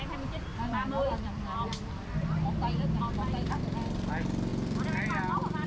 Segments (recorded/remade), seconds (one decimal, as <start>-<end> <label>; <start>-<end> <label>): 0.0-0.5 recorded; 0.5-3.6 remade; 3.6-4.5 recorded; 4.5-5.7 remade

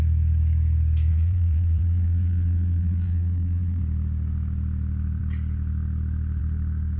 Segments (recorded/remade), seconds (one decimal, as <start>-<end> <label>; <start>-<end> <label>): 0.0-1.1 recorded; 1.1-3.8 remade; 3.8-7.0 recorded